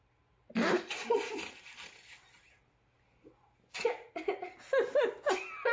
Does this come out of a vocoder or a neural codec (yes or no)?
no